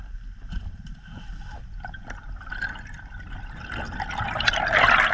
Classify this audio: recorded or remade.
recorded